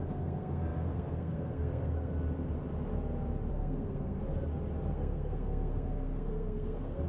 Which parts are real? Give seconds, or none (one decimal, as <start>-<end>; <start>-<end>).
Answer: 2.1-3.5; 4.2-4.9